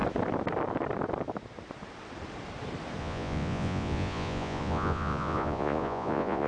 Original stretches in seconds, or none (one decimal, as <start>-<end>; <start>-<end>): 0.0-3.0